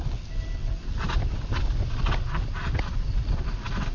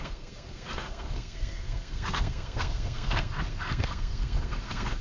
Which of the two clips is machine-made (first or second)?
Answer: second